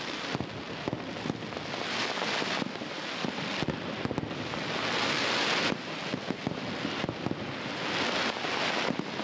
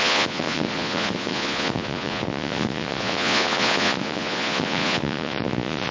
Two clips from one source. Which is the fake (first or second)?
second